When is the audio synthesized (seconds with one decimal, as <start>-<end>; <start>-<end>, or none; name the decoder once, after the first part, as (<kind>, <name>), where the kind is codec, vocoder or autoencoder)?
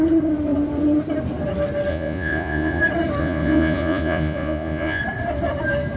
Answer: 1.9-2.8 (vocoder, Vocos); 3.2-5.0